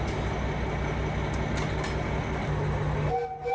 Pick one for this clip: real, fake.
real